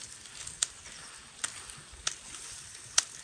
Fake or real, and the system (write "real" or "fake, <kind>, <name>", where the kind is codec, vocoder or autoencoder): real